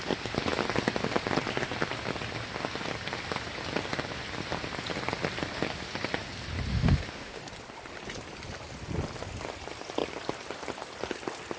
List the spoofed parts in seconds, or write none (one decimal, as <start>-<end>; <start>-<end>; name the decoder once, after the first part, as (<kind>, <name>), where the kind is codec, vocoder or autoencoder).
6.7-7.4 (autoencoder, DAC-VAE)